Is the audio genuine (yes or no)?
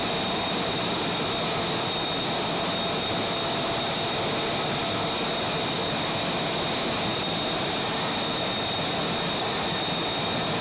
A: yes